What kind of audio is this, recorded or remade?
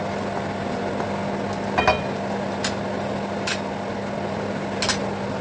recorded